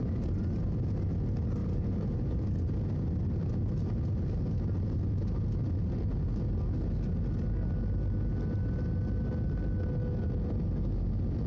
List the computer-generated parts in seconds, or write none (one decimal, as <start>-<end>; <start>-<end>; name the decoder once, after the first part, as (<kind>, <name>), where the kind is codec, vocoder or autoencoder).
1.6-2.4 (vocoder, BigVGAN v2)